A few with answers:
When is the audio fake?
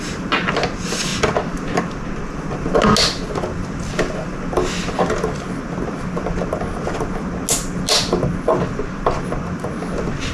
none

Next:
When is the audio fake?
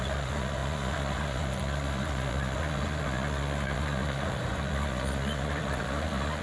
0.0-6.4 (vocoder, Vocos)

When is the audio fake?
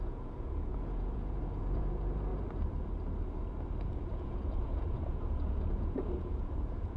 0.0-2.3 (vocoder, Vocos); 3.8-7.0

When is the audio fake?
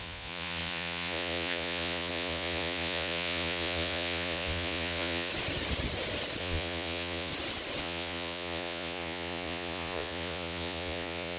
0.0-5.3 (vocoder, Vocos); 6.4-7.3; 7.8-11.4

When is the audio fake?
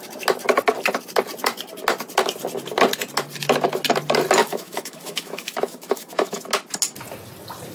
4.4-6.4 (autoencoder, DAC-VAE)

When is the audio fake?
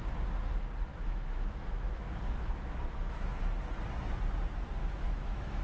0.9-3.4 (autoencoder, DAC-VAE); 4.8-5.6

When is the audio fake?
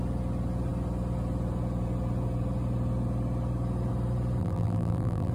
4.4-5.3 (vocoder, BigVGAN v2)